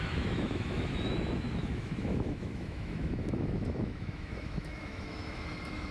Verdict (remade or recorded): remade